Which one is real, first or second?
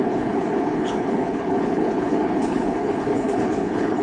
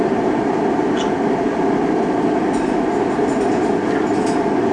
second